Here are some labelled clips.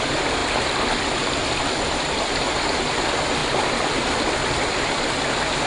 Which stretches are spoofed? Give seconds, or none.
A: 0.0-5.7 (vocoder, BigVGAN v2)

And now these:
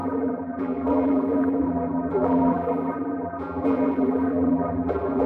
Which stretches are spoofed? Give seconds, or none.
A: 0.0-5.3 (vocoder, BigVGAN v2)

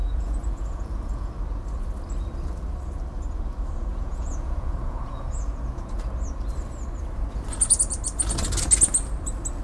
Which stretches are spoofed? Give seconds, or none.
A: 0.0-1.3 (vocoder, Vocos); 3.9-6.1

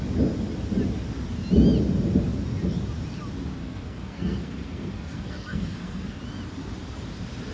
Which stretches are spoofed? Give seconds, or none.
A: 3.6-6.2 (codec, SNAC)